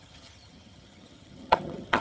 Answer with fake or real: fake